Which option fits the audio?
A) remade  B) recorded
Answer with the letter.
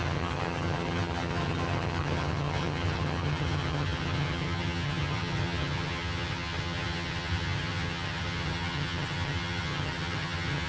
A